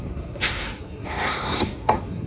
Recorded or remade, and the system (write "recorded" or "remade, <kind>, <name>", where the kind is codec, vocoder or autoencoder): remade, codec, SNAC